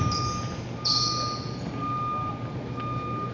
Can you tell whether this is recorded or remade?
recorded